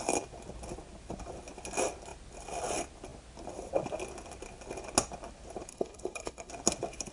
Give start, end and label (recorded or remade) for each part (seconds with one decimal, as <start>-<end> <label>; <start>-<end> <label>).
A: 0.0-5.7 recorded; 5.7-6.5 remade; 6.5-7.1 recorded